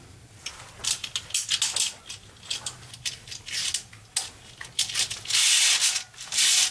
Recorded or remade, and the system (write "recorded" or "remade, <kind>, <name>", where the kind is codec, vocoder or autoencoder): recorded